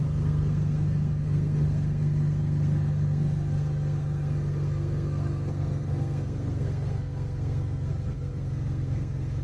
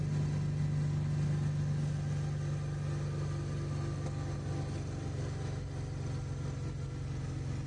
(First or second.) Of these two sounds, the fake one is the first